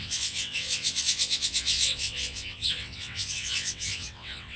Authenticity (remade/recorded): remade